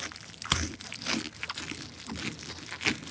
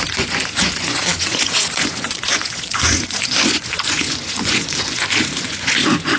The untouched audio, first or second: first